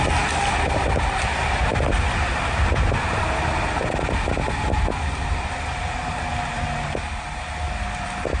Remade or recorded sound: recorded